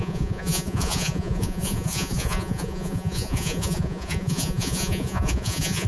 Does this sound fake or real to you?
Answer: fake